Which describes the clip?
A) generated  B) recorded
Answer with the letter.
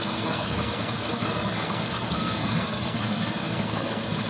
A